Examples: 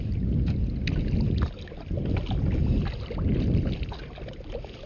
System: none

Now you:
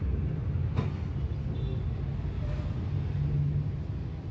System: none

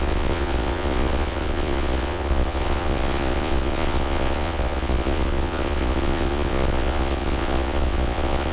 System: vocoder, Vocos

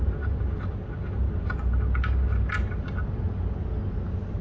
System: none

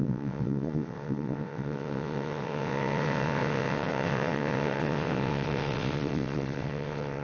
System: vocoder, WaveNeXt